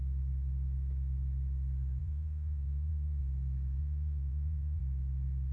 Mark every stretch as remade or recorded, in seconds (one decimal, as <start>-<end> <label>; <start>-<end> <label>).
0.0-2.0 recorded; 2.0-3.2 remade; 3.2-3.8 recorded; 3.8-4.8 remade; 4.8-5.5 recorded

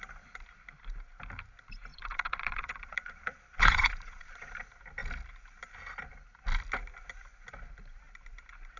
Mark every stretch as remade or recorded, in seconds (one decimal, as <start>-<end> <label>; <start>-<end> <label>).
0.0-1.9 recorded; 1.9-4.5 remade; 4.5-8.8 recorded